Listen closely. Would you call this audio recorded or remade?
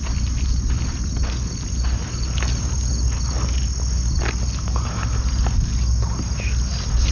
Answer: recorded